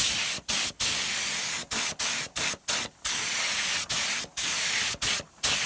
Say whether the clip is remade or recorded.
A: recorded